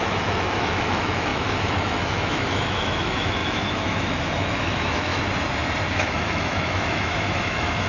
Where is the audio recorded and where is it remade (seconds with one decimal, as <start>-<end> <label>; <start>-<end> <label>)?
0.0-5.1 remade; 5.1-5.9 recorded; 5.9-7.9 remade